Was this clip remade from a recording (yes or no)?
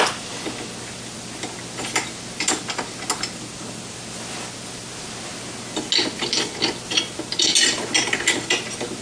no